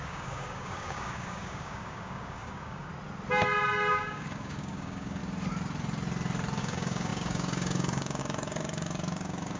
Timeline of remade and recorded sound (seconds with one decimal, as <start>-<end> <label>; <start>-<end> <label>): 0.0-2.9 remade; 2.9-3.9 recorded; 3.9-5.2 remade; 5.2-6.6 recorded; 6.6-9.6 remade